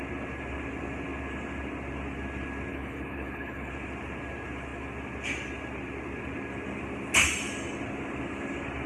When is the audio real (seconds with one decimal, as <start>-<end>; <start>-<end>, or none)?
0.0-2.7; 3.7-8.9